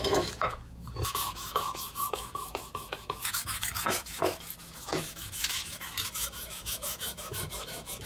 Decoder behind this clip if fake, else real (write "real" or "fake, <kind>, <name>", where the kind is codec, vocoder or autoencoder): fake, autoencoder, DAC-VAE